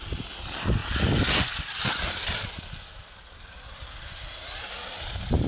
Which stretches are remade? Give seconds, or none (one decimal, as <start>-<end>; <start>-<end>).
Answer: none